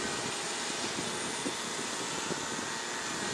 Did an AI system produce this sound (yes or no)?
no